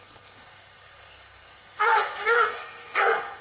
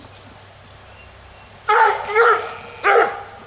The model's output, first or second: first